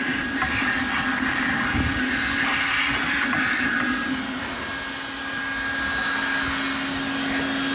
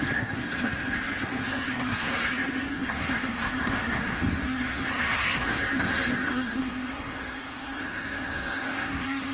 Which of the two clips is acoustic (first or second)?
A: first